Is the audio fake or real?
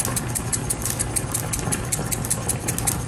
real